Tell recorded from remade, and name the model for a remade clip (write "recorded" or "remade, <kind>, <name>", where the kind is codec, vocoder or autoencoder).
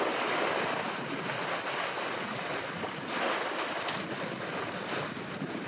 recorded